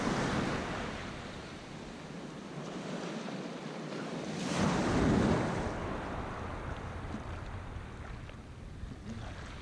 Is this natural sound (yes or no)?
yes